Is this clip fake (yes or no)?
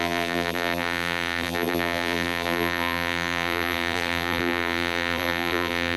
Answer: yes